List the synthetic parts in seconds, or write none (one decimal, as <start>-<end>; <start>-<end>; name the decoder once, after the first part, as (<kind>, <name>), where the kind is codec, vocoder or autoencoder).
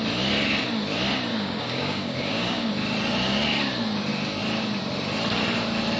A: 1.3-2.7 (codec, DAC)